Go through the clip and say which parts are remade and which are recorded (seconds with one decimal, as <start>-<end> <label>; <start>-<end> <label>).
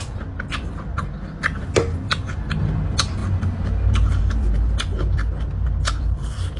0.0-6.6 recorded